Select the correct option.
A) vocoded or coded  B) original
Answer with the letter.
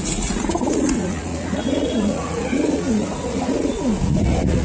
A